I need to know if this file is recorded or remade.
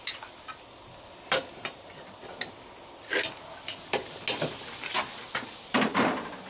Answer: recorded